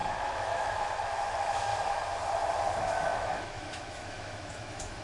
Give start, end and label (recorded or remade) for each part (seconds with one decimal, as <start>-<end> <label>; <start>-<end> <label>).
0.0-1.7 remade; 1.7-2.7 recorded; 2.7-5.0 remade